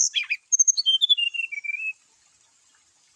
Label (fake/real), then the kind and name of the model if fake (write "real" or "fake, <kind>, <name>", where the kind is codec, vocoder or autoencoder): real